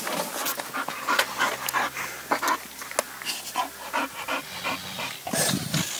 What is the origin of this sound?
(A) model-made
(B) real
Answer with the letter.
B